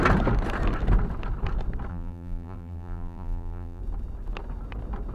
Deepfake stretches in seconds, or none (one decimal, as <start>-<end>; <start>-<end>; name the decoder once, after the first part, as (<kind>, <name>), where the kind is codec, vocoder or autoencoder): 1.9-3.8 (vocoder, BigVGAN v2)